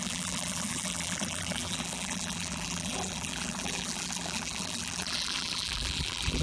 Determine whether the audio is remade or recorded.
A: remade